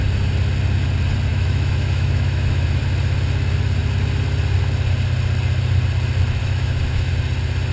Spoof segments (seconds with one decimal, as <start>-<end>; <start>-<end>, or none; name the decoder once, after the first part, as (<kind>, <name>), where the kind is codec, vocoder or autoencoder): 1.3-2.8 (autoencoder, DAC-VAE); 6.4-7.1